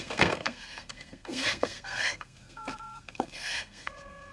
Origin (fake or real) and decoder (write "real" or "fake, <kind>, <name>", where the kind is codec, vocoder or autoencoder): fake, codec, SNAC